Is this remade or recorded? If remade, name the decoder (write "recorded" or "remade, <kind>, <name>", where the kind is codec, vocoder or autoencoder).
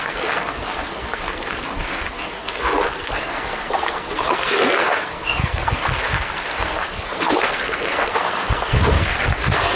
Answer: remade, codec, SNAC